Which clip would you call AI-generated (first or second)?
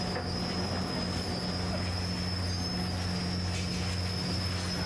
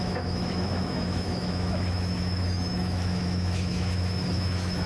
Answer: second